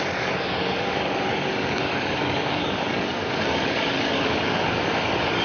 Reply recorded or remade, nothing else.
remade